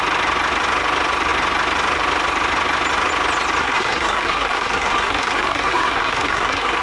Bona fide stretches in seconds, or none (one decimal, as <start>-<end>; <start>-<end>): 0.0-3.6